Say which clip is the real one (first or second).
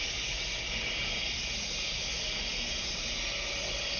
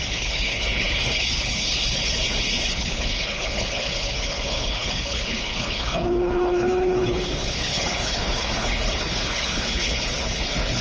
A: first